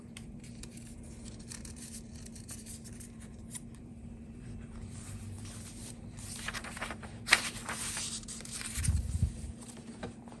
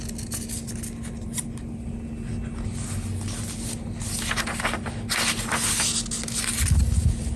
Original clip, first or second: second